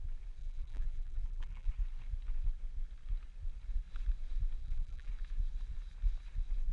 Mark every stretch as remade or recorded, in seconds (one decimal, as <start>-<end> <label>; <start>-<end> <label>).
0.0-0.4 recorded; 0.4-1.7 remade; 1.7-4.6 recorded; 4.6-5.1 remade; 5.1-6.7 recorded